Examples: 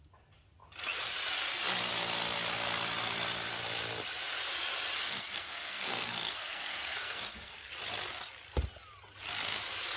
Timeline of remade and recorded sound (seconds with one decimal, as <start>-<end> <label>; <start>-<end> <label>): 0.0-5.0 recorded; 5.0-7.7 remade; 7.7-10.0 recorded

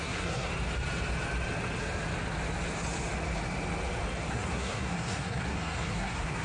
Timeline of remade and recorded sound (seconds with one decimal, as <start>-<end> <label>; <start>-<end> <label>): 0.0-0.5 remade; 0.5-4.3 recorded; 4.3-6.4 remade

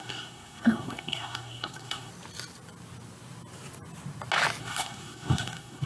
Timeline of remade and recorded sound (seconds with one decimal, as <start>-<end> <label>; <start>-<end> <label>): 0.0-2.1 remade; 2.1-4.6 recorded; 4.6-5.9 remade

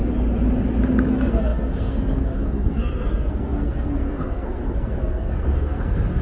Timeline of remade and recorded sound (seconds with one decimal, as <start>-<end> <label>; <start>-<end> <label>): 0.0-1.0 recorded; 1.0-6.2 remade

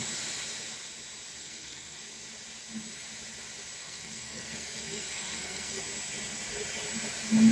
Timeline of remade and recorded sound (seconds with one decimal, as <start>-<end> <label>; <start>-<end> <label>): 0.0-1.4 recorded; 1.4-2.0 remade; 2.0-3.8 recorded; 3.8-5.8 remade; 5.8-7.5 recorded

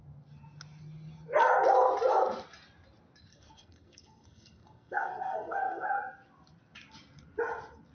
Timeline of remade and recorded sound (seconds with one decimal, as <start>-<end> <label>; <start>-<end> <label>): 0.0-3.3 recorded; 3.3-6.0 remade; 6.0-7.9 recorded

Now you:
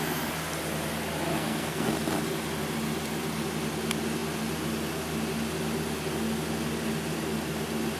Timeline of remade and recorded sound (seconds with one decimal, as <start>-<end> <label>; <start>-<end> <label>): 0.0-1.3 recorded; 1.3-1.9 remade; 1.9-8.0 recorded

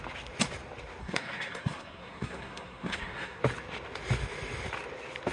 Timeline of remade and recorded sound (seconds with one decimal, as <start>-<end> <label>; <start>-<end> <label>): 0.0-1.0 recorded; 1.0-3.4 remade; 3.4-5.3 recorded